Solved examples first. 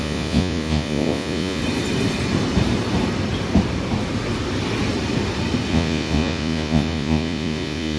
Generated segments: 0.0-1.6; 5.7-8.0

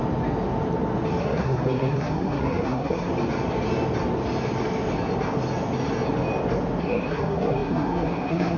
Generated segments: 1.2-3.1; 6.8-8.6